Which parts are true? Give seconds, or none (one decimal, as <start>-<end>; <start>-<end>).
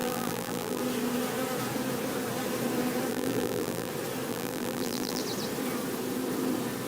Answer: 0.8-3.1; 3.9-4.3; 5.2-6.9